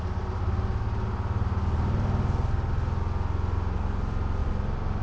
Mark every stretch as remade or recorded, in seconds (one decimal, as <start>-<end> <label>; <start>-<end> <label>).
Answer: 0.0-5.0 recorded